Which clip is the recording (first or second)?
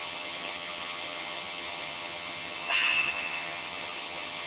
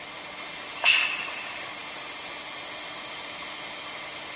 second